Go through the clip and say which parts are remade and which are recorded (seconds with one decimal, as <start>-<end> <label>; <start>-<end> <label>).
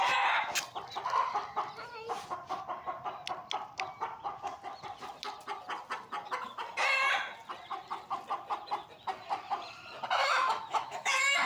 0.0-10.2 recorded; 10.2-11.5 remade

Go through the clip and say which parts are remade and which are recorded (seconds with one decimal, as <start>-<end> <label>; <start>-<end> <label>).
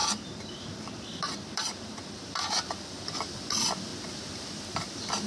0.0-3.0 remade; 3.0-5.3 recorded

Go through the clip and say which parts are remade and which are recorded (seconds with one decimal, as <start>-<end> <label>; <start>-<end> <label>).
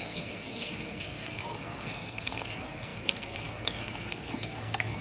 0.0-5.0 remade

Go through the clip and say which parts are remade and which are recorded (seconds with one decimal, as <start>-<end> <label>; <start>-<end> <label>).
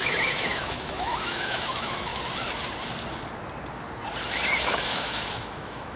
0.0-2.1 remade; 2.1-4.6 recorded; 4.6-6.0 remade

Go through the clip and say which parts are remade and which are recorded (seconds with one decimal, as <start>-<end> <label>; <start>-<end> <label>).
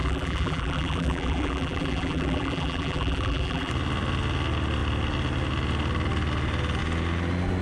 0.0-3.7 remade; 3.7-7.6 recorded